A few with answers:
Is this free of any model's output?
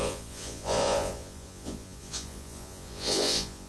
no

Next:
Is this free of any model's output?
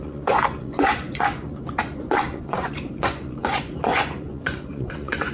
no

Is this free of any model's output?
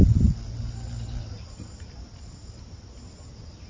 yes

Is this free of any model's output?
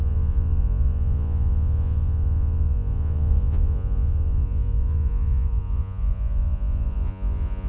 no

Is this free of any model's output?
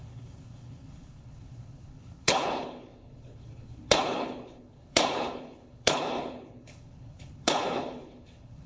no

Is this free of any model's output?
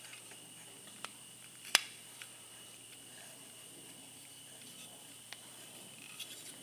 no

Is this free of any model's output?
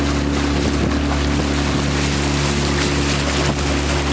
yes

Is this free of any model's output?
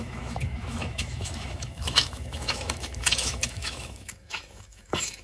no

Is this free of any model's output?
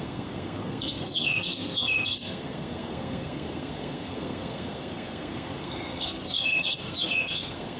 no